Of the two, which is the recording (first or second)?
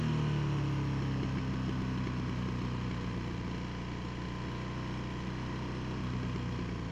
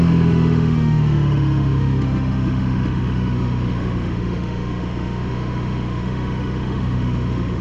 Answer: first